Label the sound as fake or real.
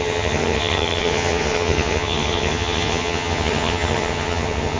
fake